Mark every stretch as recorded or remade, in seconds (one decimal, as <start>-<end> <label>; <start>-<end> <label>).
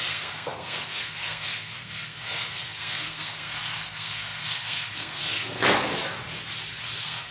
0.0-5.9 remade; 5.9-6.8 recorded; 6.8-7.3 remade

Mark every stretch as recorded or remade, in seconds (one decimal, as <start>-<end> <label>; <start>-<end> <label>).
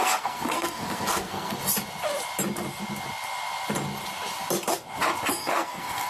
0.0-1.6 remade; 1.6-5.3 recorded; 5.3-6.1 remade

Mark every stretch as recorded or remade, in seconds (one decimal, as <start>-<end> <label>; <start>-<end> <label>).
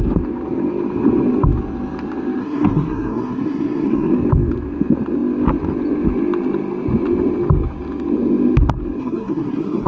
0.0-2.4 recorded; 2.4-4.1 remade; 4.1-9.0 recorded; 9.0-9.9 remade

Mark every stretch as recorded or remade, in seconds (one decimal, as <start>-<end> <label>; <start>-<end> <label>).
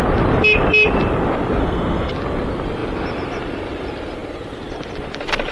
0.0-1.6 recorded; 1.6-2.1 remade; 2.1-5.5 recorded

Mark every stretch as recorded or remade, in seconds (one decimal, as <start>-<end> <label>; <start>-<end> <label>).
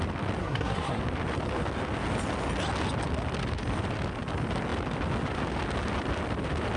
0.0-0.4 recorded; 0.4-1.0 remade; 1.0-6.8 recorded